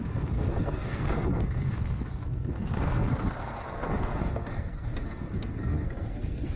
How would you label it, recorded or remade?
remade